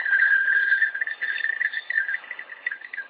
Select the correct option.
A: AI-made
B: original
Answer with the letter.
A